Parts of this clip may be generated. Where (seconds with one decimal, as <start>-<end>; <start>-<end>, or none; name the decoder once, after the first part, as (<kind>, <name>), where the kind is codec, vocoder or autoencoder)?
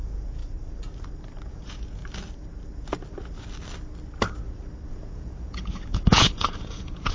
0.0-0.4 (vocoder, Vocos); 1.5-2.0; 4.9-7.1